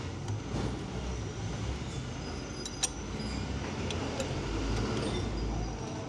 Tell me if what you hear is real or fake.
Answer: real